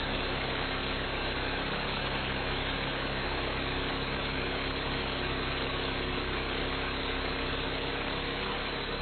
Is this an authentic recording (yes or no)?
no